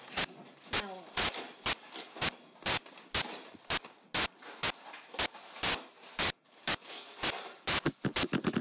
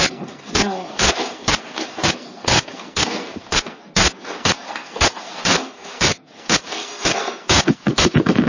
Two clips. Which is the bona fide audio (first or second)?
first